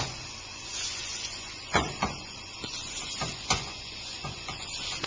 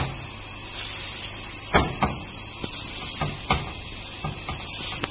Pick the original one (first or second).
second